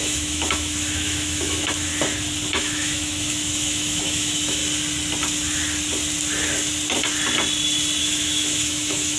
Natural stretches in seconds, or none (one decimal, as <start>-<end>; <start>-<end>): 1.9-2.6; 4.6-8.0